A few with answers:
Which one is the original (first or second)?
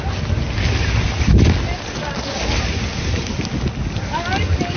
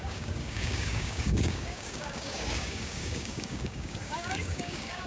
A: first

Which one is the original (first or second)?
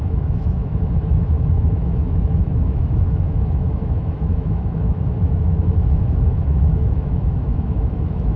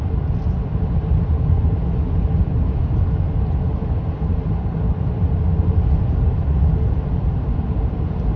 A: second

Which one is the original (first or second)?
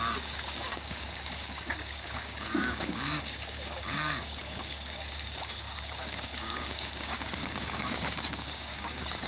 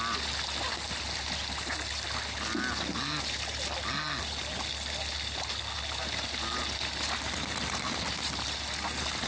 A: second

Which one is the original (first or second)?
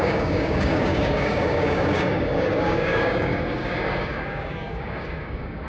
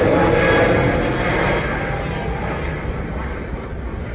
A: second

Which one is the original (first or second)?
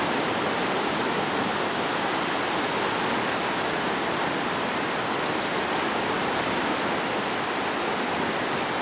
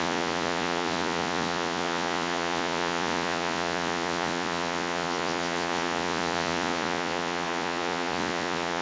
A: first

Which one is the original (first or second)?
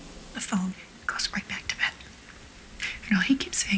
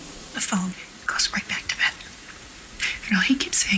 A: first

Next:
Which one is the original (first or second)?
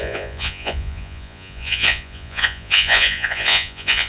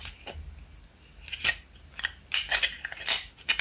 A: second